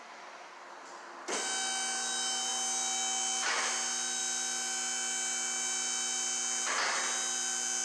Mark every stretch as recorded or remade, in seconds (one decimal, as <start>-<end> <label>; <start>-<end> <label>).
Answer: 0.0-7.8 recorded